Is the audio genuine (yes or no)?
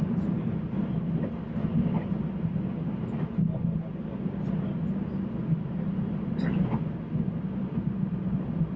yes